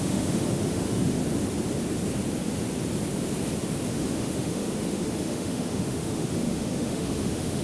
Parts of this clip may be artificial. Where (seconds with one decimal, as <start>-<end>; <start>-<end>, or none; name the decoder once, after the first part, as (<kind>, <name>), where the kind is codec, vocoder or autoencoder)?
0.0-1.2 (autoencoder, DAC-VAE); 3.9-7.6